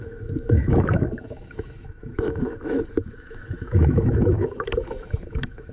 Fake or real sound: fake